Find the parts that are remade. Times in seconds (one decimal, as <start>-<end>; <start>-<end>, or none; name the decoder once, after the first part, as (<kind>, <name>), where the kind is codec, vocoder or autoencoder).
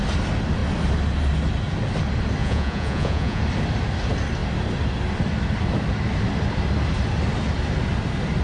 2.4-3.4 (vocoder, Vocos)